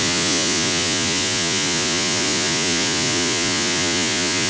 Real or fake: fake